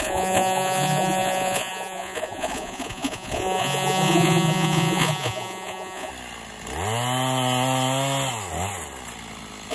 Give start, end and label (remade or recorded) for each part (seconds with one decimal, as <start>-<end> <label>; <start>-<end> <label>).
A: 0.0-6.1 remade; 6.1-9.7 recorded